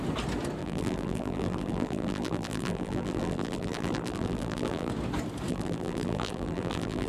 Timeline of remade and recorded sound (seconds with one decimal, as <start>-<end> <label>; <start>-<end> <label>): 0.0-0.6 recorded; 0.6-4.9 remade; 4.9-5.5 recorded; 5.5-7.1 remade